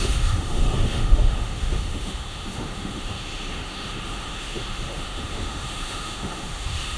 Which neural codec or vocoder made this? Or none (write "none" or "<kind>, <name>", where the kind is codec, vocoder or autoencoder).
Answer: autoencoder, DAC-VAE